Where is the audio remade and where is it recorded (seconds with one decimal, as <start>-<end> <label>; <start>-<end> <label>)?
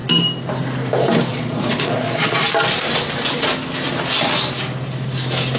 0.0-1.3 recorded; 1.3-2.3 remade; 2.3-5.6 recorded